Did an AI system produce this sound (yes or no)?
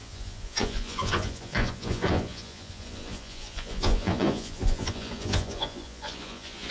yes